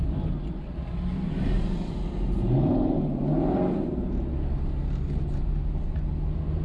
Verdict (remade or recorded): recorded